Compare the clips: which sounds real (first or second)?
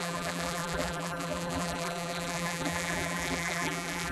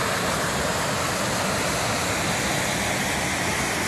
second